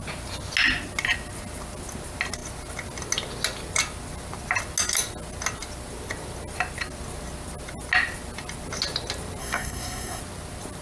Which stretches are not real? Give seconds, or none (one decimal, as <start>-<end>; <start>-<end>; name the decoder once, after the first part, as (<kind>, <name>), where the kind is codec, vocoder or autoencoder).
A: 9.4-10.2 (codec, SNAC)